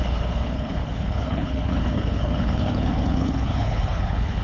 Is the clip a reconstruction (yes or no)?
yes